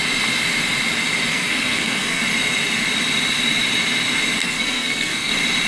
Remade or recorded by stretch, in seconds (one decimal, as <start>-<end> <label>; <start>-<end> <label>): 0.0-1.3 recorded; 1.3-2.2 remade; 2.2-4.4 recorded; 4.4-5.3 remade; 5.3-5.7 recorded

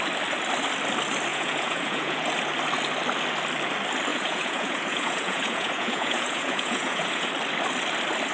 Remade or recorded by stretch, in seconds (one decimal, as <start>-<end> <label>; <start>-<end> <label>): 0.0-1.3 recorded; 1.3-2.3 remade; 2.3-4.1 recorded; 4.1-7.3 remade; 7.3-8.3 recorded

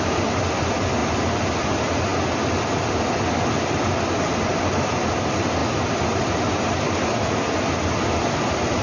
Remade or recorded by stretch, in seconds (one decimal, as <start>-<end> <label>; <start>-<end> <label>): 0.0-8.8 recorded

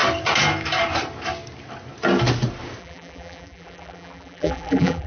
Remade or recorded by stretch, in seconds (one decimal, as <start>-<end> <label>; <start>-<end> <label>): 0.0-2.8 recorded; 2.8-5.1 remade

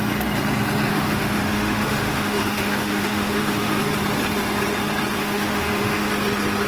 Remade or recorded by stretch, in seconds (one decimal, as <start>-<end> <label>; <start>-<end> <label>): 0.0-0.9 recorded; 0.9-3.8 remade; 3.8-5.2 recorded; 5.2-6.1 remade; 6.1-6.7 recorded

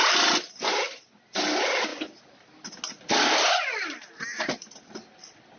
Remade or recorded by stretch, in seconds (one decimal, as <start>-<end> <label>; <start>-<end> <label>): 0.0-5.6 recorded